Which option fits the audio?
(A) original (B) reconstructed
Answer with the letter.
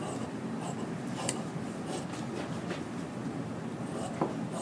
B